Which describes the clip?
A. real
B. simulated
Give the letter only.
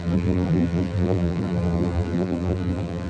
B